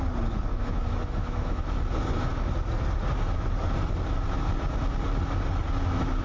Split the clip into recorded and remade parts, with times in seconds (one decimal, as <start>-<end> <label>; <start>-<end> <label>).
0.0-0.5 recorded; 0.5-1.6 remade; 1.6-6.2 recorded